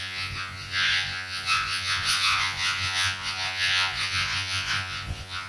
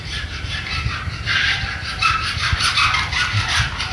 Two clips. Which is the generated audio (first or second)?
first